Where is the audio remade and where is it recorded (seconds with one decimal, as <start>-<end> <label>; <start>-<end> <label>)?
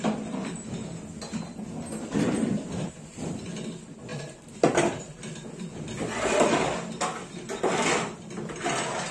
0.0-9.1 recorded